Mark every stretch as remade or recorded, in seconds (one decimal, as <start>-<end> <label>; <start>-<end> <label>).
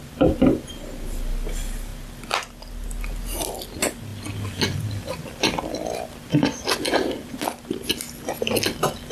0.0-9.1 recorded